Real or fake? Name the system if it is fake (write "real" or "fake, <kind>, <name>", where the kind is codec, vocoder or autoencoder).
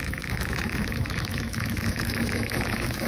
fake, autoencoder, DAC-VAE